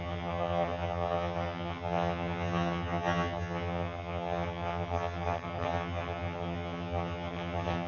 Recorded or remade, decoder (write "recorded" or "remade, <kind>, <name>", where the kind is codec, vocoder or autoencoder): remade, vocoder, HiFi-GAN